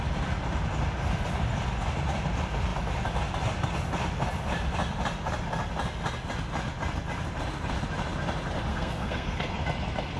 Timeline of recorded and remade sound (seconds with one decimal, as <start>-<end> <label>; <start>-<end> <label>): 0.0-8.7 recorded; 8.7-9.5 remade; 9.5-10.2 recorded